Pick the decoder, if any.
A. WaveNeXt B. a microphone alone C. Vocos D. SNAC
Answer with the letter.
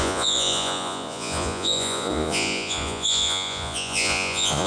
C